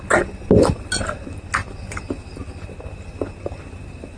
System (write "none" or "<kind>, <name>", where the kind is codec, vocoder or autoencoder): none